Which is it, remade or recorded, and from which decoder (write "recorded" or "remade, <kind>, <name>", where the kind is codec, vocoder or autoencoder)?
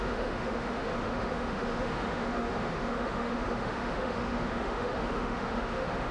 remade, autoencoder, DAC-VAE